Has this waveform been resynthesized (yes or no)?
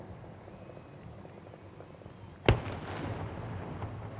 no